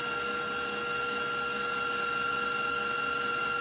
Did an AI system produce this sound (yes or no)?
no